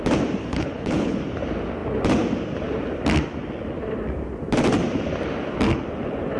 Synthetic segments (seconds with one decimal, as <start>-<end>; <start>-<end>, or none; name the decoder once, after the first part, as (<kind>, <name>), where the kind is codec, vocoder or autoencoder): 0.4-1.2 (codec, HILCodec)